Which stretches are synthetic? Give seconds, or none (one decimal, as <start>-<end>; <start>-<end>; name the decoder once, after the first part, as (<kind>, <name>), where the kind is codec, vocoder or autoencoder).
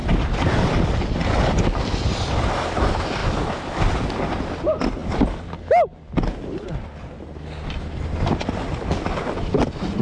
none